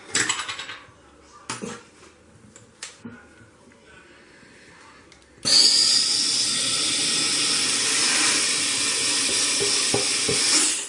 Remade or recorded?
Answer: recorded